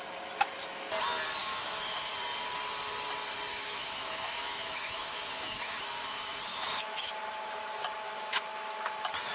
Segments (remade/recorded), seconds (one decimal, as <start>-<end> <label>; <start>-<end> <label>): 0.0-1.4 recorded; 1.4-2.1 remade; 2.1-3.5 recorded; 3.5-5.8 remade; 5.8-6.5 recorded; 6.5-7.1 remade; 7.1-7.8 recorded; 7.8-8.9 remade; 8.9-9.3 recorded